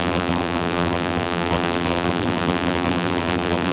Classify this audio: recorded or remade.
remade